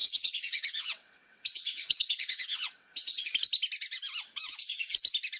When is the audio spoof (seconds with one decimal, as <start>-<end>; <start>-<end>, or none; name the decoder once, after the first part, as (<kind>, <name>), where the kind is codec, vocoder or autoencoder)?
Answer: 0.0-3.2 (vocoder, WaveNeXt)